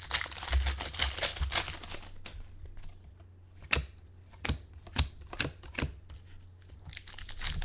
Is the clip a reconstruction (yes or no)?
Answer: no